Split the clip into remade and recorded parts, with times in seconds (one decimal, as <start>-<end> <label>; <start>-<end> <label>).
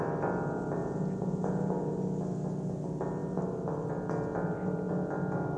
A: 0.0-0.8 recorded; 0.8-2.2 remade; 2.2-5.6 recorded